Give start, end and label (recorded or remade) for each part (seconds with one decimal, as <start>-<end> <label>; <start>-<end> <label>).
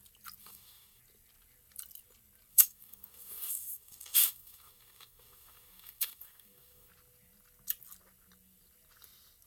0.0-0.4 recorded; 0.4-1.0 remade; 1.0-2.5 recorded; 2.5-6.9 remade; 6.9-9.5 recorded